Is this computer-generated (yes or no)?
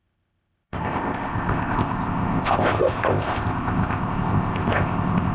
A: yes